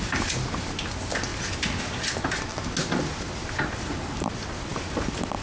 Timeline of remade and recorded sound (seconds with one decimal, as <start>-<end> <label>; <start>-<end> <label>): 0.0-5.4 recorded